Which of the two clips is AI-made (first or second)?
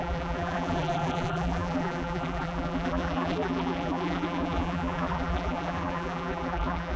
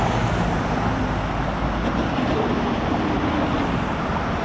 first